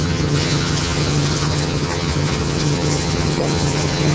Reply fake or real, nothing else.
fake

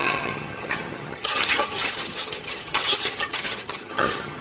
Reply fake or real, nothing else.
fake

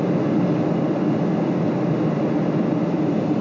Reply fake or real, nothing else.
real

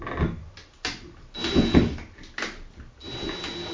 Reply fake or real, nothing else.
real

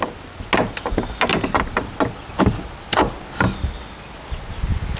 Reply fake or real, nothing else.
real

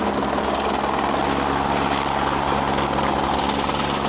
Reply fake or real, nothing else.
real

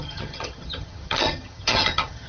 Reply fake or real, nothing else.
fake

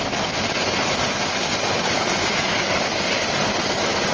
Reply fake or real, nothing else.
real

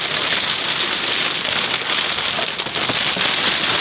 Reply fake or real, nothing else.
real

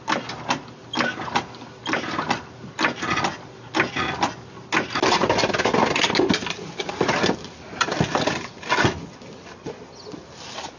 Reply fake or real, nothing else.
real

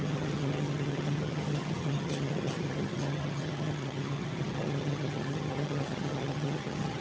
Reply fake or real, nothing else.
fake